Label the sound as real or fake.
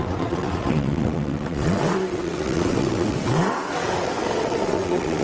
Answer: fake